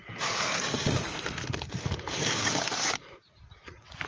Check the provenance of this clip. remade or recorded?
recorded